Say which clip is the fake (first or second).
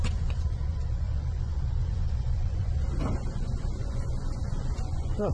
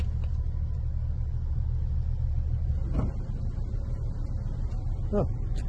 first